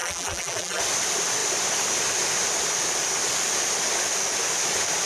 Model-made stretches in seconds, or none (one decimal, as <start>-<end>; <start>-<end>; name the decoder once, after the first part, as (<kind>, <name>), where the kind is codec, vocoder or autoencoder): 0.0-0.8 (vocoder, BigVGAN v2)